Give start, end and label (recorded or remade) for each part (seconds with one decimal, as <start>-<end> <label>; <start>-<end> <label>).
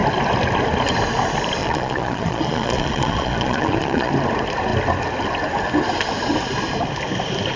0.0-1.6 recorded; 1.6-4.1 remade; 4.1-7.6 recorded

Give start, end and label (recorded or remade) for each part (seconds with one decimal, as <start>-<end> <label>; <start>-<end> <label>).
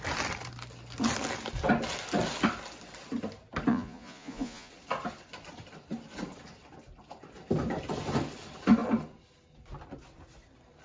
0.0-3.7 recorded; 3.7-4.7 remade; 4.7-10.8 recorded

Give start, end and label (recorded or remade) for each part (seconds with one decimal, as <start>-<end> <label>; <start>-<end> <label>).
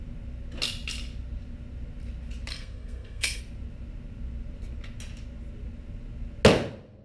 0.0-2.5 recorded; 2.5-3.4 remade; 3.4-7.0 recorded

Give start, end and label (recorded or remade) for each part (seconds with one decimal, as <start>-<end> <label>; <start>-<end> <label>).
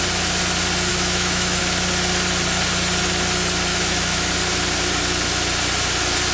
0.0-0.9 recorded; 0.9-1.6 remade; 1.6-3.7 recorded; 3.7-4.3 remade; 4.3-6.3 recorded